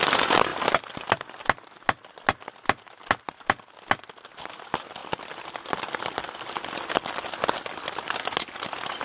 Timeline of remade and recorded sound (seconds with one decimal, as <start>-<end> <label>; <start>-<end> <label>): 0.0-9.0 recorded